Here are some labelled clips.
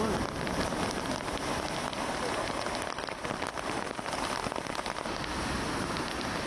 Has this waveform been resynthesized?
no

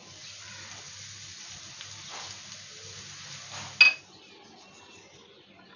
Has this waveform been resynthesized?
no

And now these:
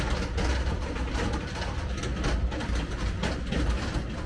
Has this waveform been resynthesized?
no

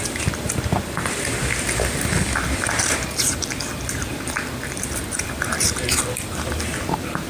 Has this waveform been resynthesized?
yes